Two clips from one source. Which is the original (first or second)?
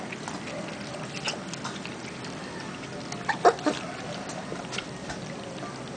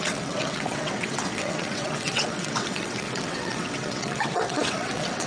first